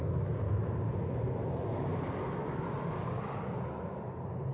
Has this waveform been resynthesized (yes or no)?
no